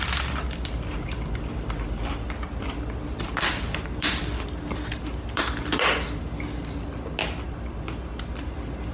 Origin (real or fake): real